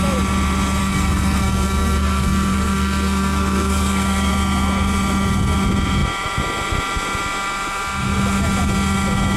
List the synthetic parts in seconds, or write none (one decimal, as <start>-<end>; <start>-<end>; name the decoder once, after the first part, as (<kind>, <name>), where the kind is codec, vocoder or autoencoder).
0.8-4.3 (codec, SNAC)